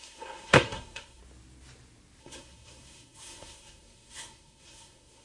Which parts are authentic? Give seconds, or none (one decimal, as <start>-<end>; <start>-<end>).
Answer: 1.2-2.2